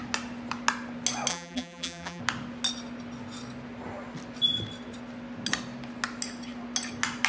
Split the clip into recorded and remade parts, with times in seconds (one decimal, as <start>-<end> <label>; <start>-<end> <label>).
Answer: 0.0-1.3 recorded; 1.3-2.2 remade; 2.2-7.3 recorded